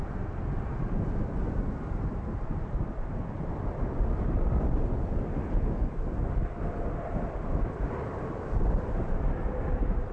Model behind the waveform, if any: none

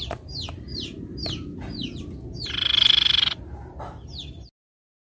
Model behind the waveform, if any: none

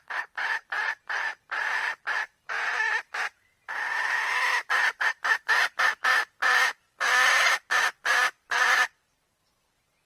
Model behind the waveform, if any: vocoder, BigVGAN v2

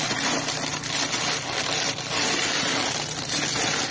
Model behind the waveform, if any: none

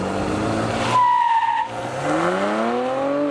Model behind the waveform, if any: none